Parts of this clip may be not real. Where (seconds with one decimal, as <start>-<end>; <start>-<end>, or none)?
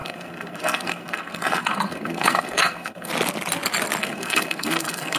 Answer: 0.0-3.1; 4.0-5.2